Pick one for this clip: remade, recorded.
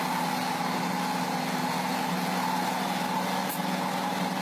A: recorded